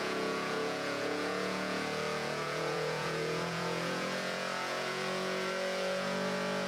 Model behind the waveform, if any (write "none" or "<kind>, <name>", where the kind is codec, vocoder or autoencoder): vocoder, Vocos